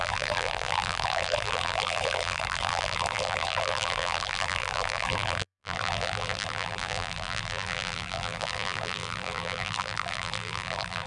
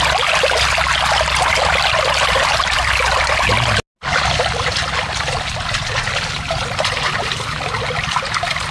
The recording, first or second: second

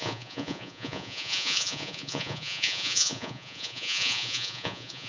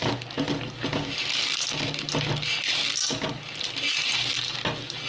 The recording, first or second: second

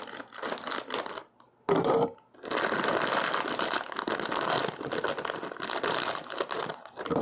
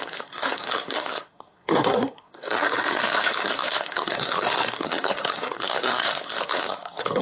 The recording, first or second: first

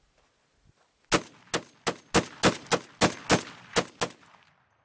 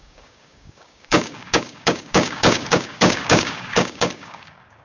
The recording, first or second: first